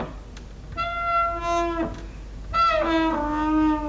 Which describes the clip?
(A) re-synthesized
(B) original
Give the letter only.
B